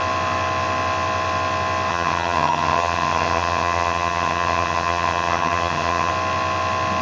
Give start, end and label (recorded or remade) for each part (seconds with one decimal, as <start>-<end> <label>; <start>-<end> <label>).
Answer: 0.0-1.9 recorded; 1.9-6.1 remade; 6.1-7.0 recorded